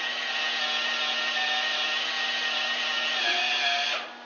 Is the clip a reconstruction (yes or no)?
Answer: no